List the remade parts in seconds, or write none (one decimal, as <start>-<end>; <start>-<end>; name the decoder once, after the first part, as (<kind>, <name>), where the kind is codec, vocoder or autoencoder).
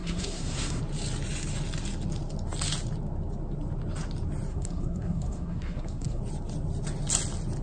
0.0-0.8 (codec, SNAC); 4.5-6.2